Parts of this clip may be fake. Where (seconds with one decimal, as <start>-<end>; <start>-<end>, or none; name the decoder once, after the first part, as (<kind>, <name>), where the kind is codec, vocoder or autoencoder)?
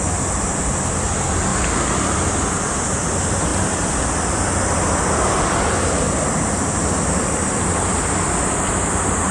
none